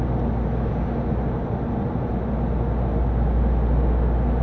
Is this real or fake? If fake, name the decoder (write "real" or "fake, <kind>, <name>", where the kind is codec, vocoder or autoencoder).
real